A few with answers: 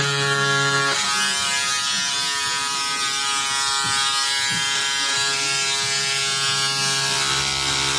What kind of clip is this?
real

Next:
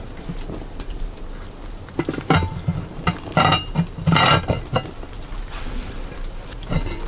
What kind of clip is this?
real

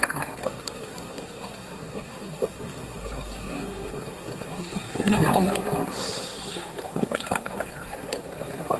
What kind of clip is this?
fake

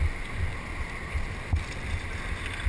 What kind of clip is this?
real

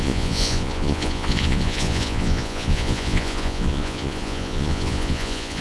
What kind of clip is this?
fake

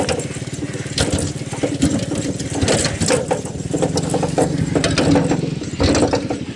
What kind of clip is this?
real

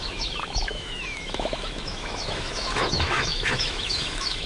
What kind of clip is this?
fake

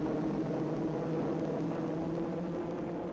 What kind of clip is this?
real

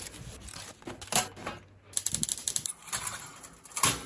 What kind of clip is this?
real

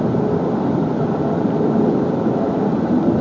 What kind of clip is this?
real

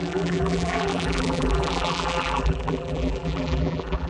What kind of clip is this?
fake